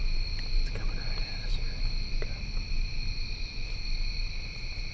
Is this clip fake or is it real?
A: real